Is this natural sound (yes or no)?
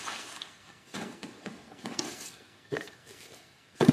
no